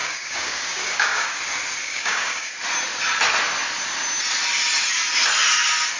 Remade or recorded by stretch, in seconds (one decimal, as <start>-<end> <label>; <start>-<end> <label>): 0.0-1.4 remade; 1.4-1.8 recorded; 1.8-2.5 remade; 2.5-6.0 recorded